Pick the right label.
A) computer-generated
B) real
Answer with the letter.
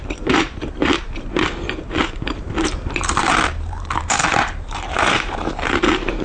A